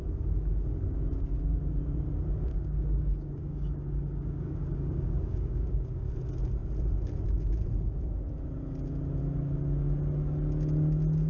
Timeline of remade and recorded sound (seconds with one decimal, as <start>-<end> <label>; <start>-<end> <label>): 0.0-2.5 recorded; 2.5-6.1 remade; 6.1-11.3 recorded